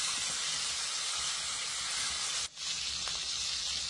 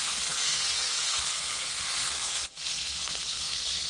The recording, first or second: first